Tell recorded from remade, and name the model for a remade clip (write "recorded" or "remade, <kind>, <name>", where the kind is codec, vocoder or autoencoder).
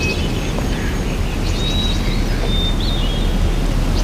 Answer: recorded